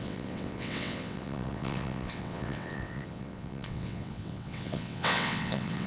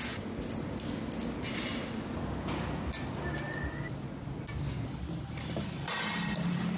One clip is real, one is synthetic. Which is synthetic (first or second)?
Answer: first